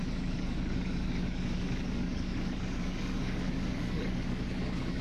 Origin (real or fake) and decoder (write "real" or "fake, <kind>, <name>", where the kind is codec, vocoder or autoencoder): fake, codec, DAC